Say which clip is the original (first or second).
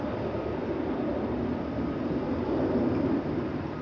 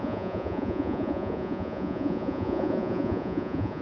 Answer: first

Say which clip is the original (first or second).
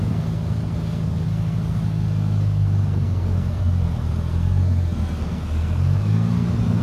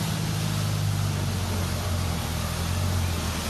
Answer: second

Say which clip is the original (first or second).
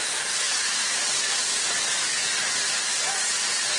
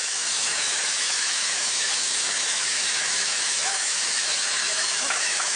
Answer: first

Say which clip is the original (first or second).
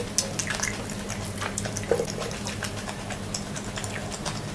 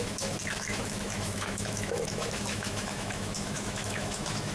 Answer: first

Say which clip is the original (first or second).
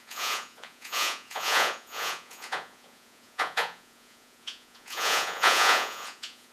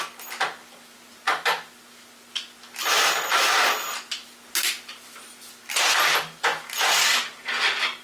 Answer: second